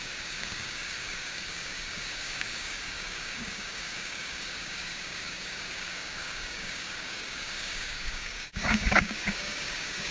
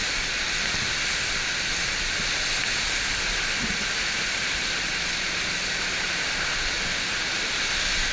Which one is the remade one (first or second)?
first